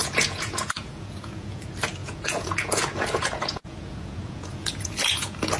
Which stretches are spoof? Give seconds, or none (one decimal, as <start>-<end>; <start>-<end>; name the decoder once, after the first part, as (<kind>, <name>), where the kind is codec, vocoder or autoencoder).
0.0-1.6 (vocoder, Vocos); 2.0-5.6